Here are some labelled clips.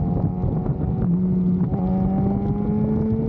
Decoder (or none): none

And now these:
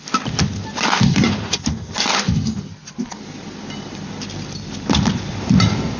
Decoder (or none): none